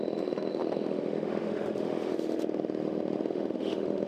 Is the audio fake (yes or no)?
yes